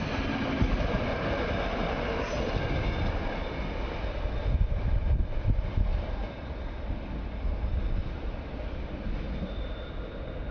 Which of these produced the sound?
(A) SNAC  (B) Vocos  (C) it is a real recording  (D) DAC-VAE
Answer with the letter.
C